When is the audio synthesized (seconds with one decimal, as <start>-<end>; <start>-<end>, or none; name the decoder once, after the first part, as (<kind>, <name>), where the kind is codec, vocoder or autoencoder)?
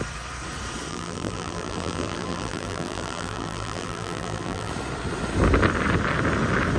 0.9-4.7 (vocoder, BigVGAN v2)